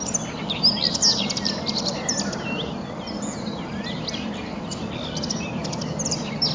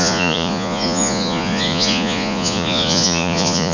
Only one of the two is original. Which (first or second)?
first